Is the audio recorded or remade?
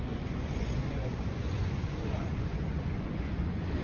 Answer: remade